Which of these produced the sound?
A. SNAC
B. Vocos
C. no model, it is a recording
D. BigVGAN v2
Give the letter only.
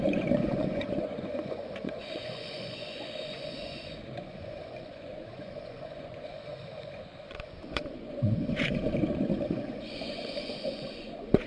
B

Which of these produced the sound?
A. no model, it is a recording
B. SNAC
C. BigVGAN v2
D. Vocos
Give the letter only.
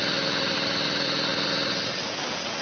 A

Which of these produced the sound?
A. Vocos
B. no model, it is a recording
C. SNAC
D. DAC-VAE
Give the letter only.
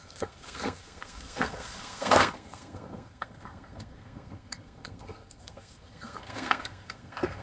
C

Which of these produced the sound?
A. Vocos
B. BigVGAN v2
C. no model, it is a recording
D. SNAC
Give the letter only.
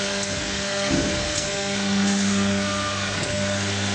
D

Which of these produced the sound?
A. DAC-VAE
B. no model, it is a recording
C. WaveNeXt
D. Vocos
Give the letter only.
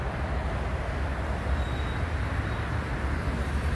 B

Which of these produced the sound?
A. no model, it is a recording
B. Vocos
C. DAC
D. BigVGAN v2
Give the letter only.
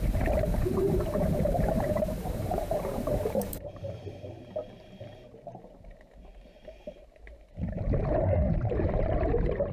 D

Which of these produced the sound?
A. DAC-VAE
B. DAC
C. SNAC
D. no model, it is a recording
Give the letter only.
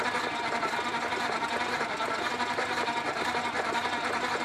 D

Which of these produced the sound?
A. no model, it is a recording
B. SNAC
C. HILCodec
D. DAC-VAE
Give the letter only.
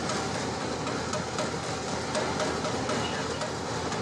A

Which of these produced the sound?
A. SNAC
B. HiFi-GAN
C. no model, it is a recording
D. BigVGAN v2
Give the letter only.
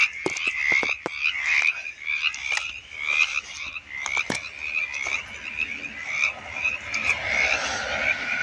C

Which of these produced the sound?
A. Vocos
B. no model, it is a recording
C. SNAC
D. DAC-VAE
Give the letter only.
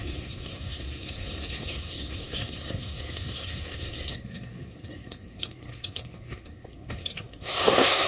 C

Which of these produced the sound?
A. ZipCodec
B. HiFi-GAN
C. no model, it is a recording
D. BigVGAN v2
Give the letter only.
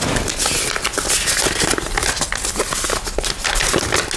C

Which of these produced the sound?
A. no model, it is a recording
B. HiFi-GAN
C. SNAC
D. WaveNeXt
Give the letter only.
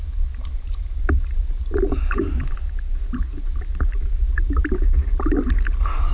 A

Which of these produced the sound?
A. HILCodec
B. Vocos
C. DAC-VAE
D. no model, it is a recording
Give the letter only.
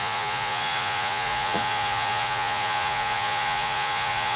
B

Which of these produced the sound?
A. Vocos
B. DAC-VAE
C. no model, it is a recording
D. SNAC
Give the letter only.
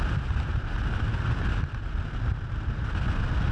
C